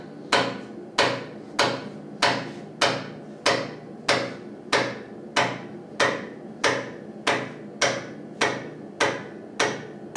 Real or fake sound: real